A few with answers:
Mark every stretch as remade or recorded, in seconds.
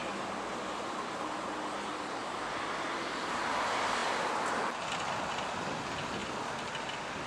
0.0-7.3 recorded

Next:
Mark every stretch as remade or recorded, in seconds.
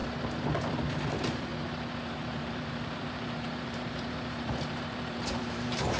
0.0-1.1 recorded; 1.1-1.5 remade; 1.5-2.1 recorded; 2.1-6.0 remade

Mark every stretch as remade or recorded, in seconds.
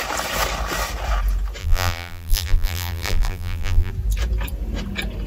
0.0-1.6 recorded; 1.6-3.9 remade; 3.9-5.3 recorded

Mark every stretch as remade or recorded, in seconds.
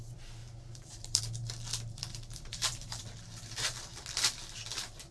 0.0-0.4 recorded; 0.4-1.2 remade; 1.2-2.5 recorded; 2.5-3.0 remade; 3.0-5.1 recorded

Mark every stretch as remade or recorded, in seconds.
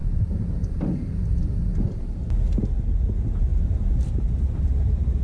0.0-1.7 recorded; 1.7-2.2 remade; 2.2-3.5 recorded; 3.5-5.2 remade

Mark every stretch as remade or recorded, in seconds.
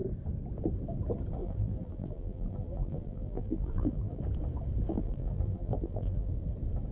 0.0-1.4 recorded; 1.4-4.2 remade; 4.2-4.9 recorded; 4.9-6.3 remade; 6.3-6.9 recorded